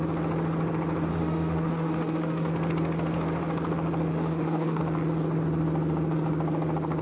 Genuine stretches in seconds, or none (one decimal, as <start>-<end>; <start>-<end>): 0.0-1.1; 2.5-4.1; 4.8-7.0